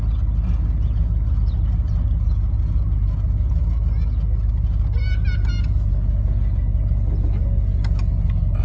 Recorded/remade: recorded